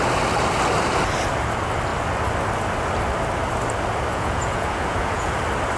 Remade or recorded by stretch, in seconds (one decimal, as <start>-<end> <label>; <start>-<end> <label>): 0.0-4.1 recorded; 4.1-5.3 remade; 5.3-5.8 recorded